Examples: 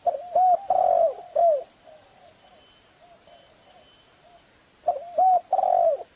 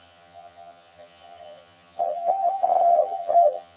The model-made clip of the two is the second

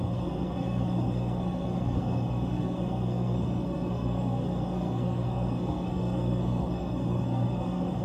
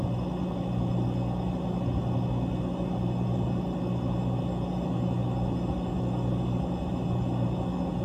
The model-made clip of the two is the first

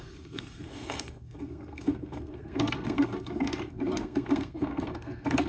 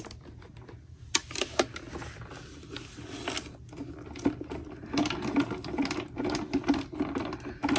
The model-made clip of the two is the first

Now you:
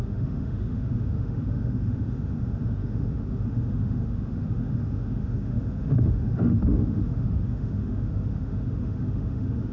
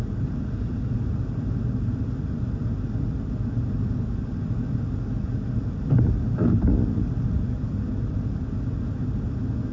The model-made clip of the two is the first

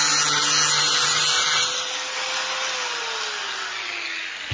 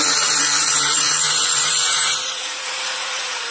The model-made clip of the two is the second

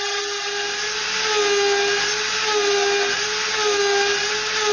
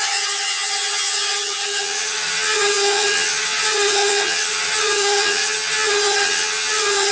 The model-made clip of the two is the second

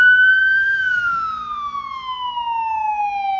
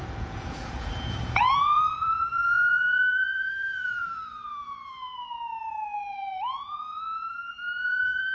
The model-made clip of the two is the second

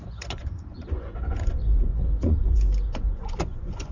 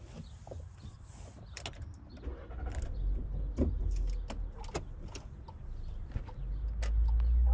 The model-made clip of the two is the first